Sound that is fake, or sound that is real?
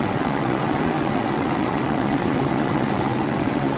fake